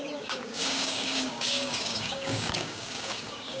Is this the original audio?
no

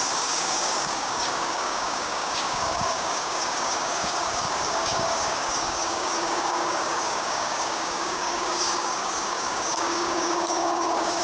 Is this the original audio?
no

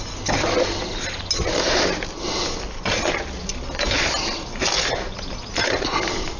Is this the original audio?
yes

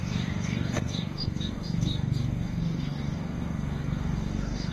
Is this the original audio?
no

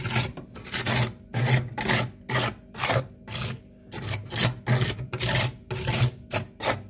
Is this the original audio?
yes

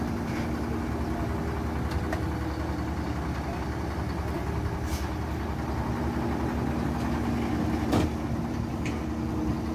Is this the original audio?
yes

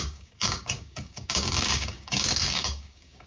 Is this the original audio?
no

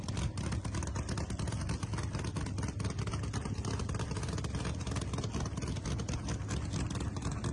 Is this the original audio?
yes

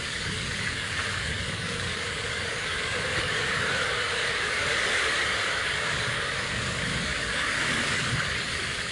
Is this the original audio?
no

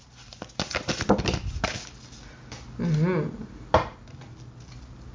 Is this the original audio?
yes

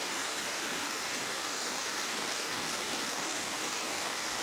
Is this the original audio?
no